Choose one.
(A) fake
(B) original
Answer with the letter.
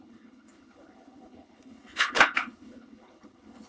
A